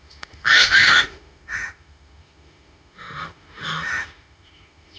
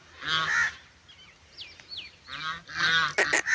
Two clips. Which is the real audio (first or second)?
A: second